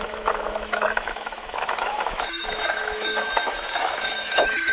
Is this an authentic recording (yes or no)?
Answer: no